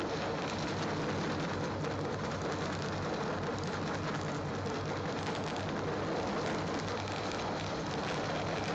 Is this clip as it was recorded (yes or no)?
yes